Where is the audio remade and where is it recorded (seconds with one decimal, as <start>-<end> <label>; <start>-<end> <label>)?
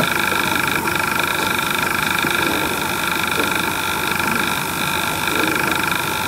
0.0-1.3 recorded; 1.3-2.5 remade; 2.5-6.3 recorded